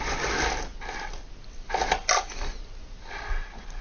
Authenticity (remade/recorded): recorded